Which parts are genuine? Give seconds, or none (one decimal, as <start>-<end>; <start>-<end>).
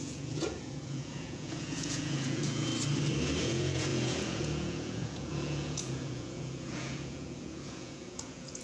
2.7-3.4